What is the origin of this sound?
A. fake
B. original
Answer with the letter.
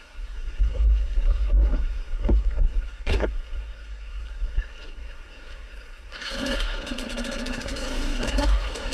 A